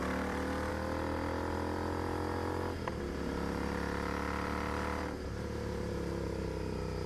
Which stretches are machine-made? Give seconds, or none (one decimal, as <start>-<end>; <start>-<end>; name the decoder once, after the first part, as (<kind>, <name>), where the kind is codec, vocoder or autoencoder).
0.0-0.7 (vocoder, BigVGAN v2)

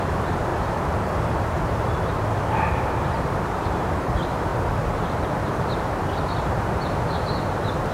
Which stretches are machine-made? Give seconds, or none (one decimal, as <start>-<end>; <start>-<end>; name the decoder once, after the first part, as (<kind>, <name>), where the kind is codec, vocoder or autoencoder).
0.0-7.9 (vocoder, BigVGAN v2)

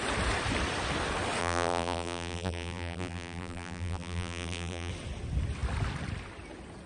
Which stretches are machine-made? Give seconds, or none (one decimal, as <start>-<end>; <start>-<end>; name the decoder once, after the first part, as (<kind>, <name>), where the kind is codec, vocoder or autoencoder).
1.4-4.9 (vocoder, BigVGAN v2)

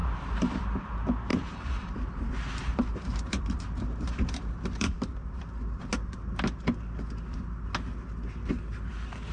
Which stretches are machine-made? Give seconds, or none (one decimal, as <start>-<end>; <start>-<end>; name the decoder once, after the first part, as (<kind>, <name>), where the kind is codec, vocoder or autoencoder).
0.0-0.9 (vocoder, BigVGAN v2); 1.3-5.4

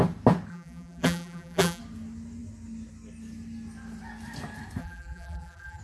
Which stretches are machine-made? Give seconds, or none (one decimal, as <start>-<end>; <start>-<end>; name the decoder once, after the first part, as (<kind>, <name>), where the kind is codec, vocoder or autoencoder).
0.5-1.8 (vocoder, BigVGAN v2); 4.8-5.8

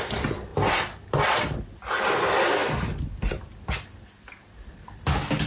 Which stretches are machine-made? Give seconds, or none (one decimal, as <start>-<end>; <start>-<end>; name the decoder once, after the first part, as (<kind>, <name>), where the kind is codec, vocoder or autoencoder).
none

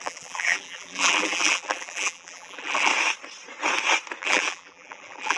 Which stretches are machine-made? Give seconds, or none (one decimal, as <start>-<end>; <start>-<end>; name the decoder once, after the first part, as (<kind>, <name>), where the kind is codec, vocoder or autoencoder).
0.0-2.9 (vocoder, BigVGAN v2); 4.2-5.4

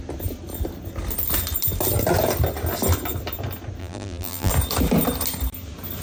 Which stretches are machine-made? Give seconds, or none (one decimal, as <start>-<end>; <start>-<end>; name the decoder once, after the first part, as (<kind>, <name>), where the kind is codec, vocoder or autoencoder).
3.8-4.5 (vocoder, BigVGAN v2)